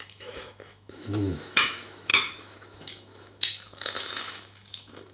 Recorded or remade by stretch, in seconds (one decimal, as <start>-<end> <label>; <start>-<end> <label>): 0.0-5.1 remade